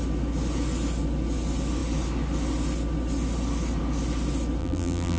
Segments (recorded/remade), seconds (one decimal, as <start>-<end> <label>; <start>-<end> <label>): 0.0-4.6 recorded; 4.6-5.2 remade